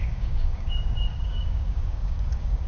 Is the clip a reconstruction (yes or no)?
yes